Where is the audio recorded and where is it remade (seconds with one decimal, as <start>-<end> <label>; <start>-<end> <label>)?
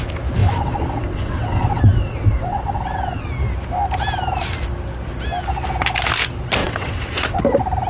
0.0-0.4 recorded; 0.4-3.3 remade; 3.3-6.6 recorded; 6.6-7.4 remade; 7.4-7.9 recorded